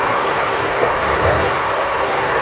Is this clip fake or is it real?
fake